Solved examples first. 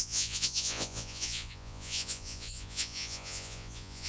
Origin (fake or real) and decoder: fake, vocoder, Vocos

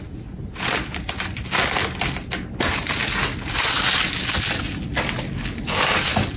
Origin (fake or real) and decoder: real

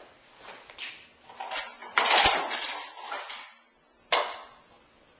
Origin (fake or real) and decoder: real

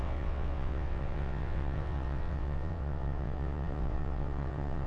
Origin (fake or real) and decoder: fake, vocoder, WaveNeXt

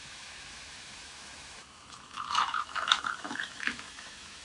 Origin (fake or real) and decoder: fake, autoencoder, DAC-VAE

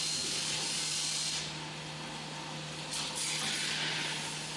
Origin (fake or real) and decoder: real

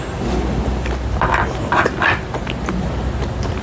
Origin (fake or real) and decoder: real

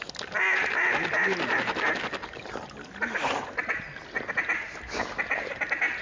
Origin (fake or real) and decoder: real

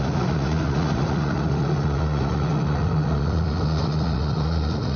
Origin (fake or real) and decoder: fake, vocoder, Vocos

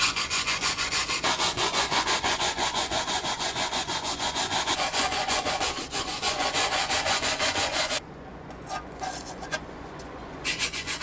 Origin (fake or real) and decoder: fake, vocoder, Vocos